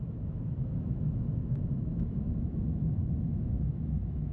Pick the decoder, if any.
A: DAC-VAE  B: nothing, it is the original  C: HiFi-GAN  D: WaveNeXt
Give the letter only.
A